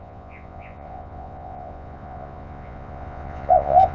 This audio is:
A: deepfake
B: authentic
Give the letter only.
A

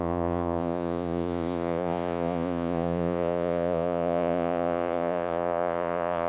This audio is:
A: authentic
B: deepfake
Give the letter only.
B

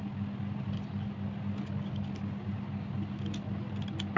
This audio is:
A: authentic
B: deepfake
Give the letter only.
A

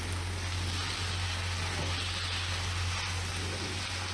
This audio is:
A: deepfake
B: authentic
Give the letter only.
B